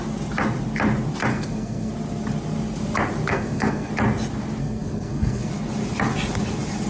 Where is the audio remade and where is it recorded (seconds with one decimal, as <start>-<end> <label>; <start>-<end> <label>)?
0.0-1.3 recorded; 1.3-1.9 remade; 1.9-3.3 recorded; 3.3-3.9 remade; 3.9-4.6 recorded; 4.6-5.5 remade; 5.5-6.9 recorded